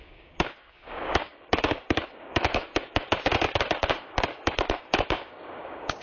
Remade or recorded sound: remade